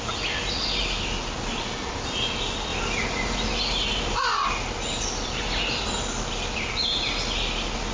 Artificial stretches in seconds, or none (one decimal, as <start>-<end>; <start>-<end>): none